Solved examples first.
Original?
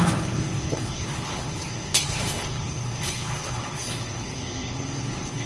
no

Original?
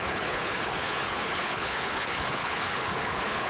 no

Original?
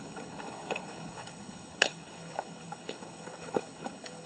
no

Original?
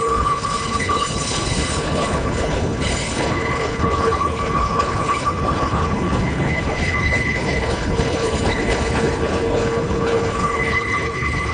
no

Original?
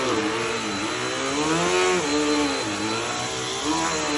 yes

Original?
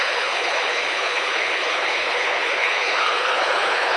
no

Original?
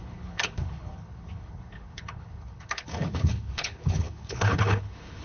no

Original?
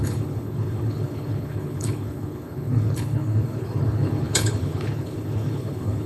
no